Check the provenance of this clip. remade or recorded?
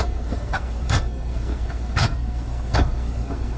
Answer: remade